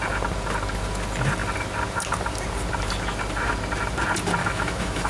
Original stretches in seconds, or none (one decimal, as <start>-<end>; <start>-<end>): 0.0-4.4